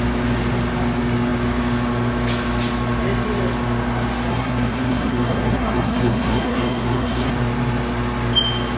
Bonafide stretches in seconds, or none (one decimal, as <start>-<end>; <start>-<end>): 0.0-4.3; 7.3-8.8